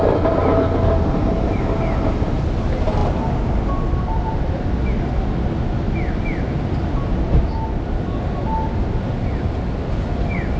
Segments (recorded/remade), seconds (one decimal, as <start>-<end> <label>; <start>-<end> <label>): 0.0-10.6 recorded